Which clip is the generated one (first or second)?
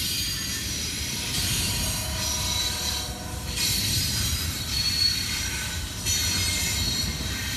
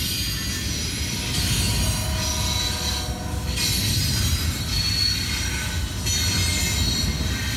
first